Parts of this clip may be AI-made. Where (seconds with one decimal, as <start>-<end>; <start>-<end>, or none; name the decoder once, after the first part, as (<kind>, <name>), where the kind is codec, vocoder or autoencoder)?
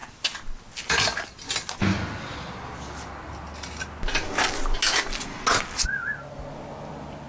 none